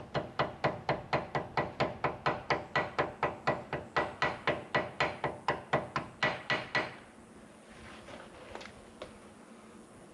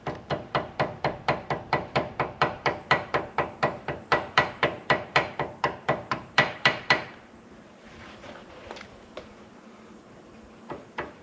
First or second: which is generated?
second